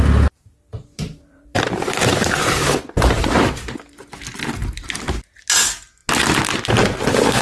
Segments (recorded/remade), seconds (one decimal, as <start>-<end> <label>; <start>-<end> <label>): 0.0-0.7 recorded; 0.7-3.5 remade; 3.5-7.4 recorded